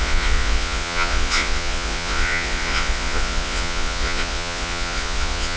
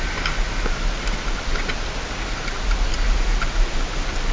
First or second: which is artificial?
first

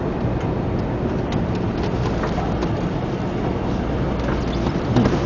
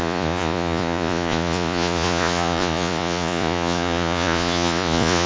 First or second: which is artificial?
second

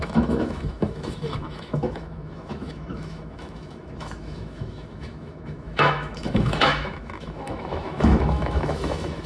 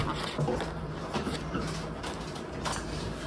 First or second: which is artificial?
first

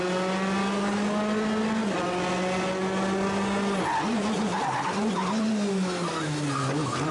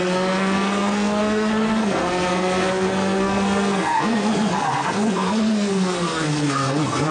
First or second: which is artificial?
second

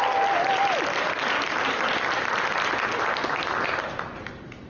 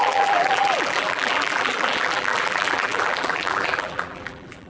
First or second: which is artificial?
second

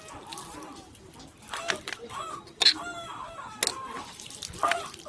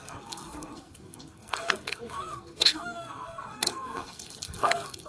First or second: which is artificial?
second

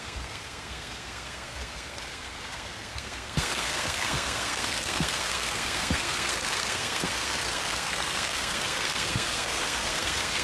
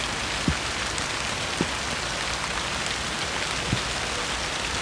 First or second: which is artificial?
first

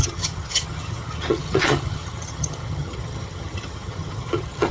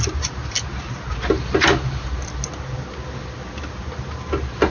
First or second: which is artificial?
first